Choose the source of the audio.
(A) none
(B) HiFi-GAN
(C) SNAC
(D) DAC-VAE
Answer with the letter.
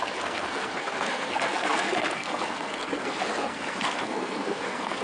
C